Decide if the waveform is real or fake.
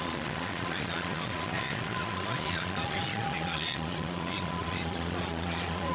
fake